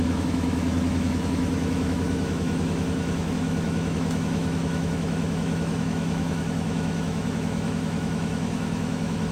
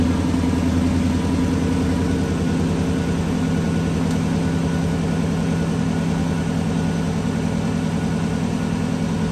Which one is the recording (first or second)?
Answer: second